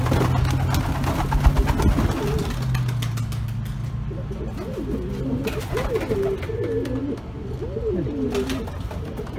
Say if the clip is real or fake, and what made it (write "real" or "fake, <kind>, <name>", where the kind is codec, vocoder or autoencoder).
real